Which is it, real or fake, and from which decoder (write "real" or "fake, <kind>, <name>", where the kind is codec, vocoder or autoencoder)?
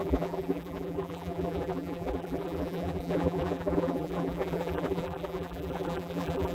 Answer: fake, vocoder, BigVGAN v2